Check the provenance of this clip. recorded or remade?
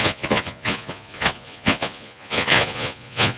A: remade